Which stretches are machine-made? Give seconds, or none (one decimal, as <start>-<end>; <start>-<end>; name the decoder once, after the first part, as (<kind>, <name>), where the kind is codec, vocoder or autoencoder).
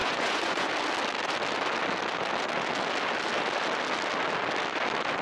0.0-0.7 (vocoder, Vocos)